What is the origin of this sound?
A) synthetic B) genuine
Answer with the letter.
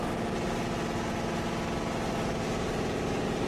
B